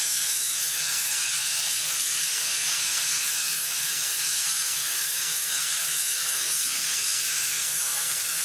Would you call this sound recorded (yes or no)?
no